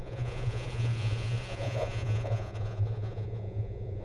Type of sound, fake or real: fake